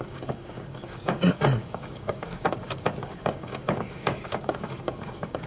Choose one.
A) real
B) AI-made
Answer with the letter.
B